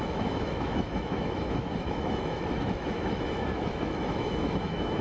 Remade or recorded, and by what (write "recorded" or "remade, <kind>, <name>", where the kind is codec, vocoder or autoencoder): remade, autoencoder, DAC-VAE